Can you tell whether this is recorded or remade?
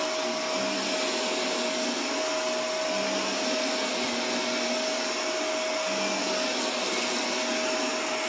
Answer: recorded